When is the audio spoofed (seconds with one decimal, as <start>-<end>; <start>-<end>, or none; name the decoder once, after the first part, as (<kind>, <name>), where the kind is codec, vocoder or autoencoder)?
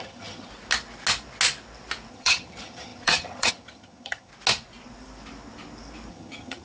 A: 0.0-0.5 (vocoder, HiFi-GAN); 2.1-4.3; 6.1-6.6